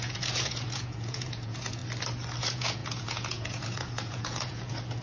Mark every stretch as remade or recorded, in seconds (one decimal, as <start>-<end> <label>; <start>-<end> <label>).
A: 0.0-1.8 remade; 1.8-2.4 recorded; 2.4-5.0 remade